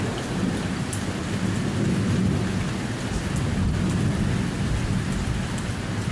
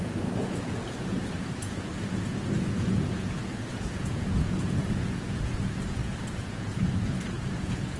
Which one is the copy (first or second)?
second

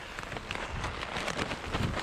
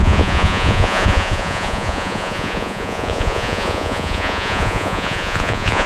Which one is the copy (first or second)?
second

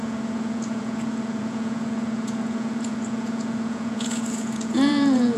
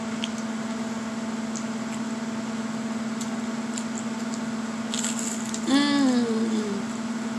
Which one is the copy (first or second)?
first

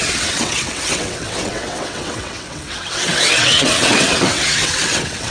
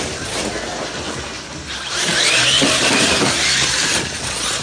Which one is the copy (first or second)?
first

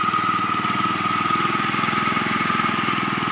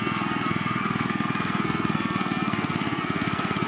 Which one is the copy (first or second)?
second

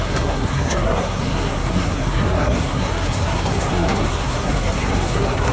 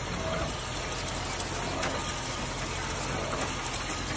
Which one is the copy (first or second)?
first